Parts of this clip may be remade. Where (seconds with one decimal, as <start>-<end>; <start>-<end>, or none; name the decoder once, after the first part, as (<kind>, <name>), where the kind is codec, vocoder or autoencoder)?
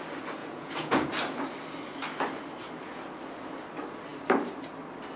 0.4-1.1 (vocoder, Vocos)